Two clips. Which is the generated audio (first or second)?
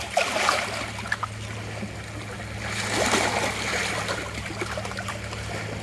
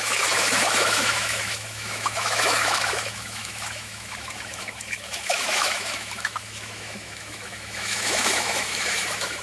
second